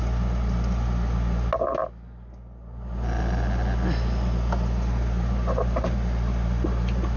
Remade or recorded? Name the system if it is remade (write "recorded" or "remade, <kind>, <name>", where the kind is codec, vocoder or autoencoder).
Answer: recorded